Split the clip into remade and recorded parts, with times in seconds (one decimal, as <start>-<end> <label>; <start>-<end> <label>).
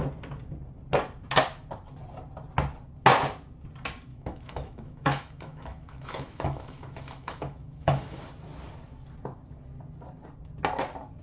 0.0-4.1 recorded; 4.1-8.2 remade; 8.2-11.2 recorded